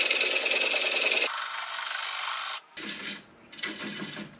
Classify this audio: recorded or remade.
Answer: recorded